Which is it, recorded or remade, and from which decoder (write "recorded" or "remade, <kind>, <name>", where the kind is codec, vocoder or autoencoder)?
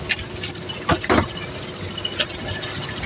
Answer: recorded